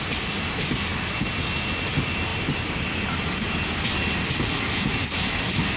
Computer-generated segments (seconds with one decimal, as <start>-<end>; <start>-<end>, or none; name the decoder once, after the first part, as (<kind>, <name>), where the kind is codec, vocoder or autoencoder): none